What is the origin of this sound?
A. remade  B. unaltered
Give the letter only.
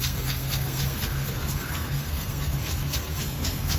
A